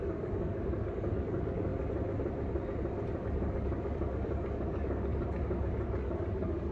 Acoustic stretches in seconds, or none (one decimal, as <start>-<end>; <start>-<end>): 1.7-3.2